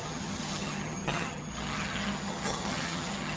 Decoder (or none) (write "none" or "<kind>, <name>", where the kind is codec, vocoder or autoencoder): vocoder, HiFi-GAN